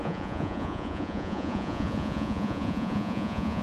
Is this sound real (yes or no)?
no